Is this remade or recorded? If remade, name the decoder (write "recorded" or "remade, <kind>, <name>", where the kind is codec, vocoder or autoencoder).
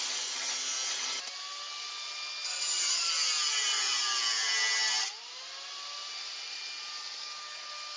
recorded